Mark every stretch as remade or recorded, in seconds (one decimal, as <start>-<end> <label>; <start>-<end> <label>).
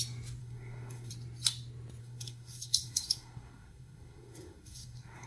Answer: 0.0-0.4 recorded; 0.4-1.1 remade; 1.1-2.0 recorded; 2.0-5.3 remade